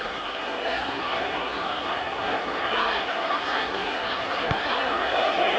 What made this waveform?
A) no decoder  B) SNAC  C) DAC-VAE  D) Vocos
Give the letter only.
B